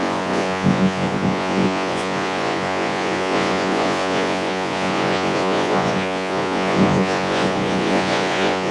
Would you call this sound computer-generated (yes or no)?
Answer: yes